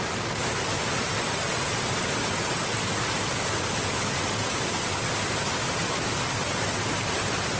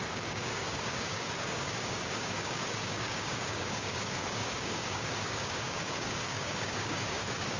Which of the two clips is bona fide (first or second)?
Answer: first